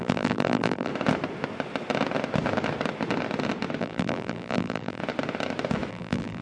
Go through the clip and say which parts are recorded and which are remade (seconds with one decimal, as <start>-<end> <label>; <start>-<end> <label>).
0.0-0.9 remade; 0.9-3.8 recorded; 3.8-5.0 remade; 5.0-5.9 recorded; 5.9-6.4 remade